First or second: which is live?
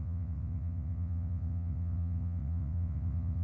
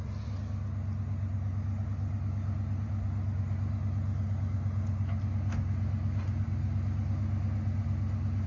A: second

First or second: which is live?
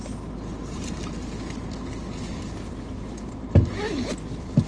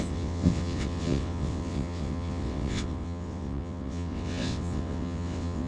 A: first